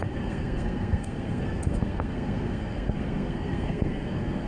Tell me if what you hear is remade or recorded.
remade